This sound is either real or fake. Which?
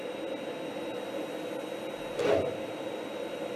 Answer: real